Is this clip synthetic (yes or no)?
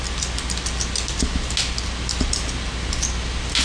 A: no